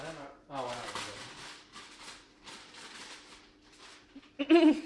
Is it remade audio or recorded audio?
recorded